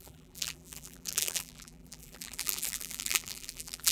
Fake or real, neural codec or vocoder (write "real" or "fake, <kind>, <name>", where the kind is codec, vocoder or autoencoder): fake, vocoder, BigVGAN v2